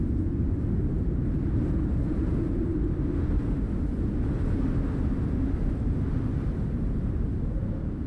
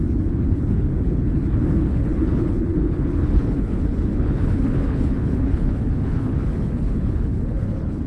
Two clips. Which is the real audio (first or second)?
first